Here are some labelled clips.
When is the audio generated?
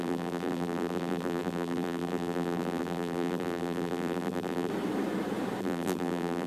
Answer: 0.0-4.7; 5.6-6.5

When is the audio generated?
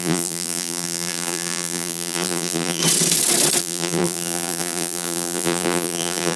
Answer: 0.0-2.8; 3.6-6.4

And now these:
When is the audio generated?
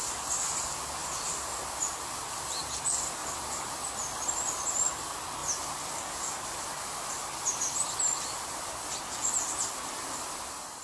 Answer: 1.0-1.6; 5.4-10.8